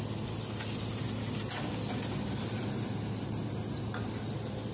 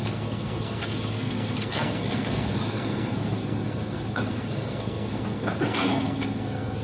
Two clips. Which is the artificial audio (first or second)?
second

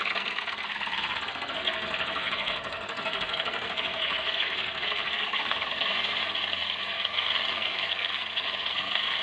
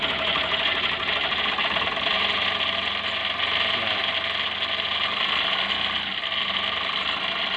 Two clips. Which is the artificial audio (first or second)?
first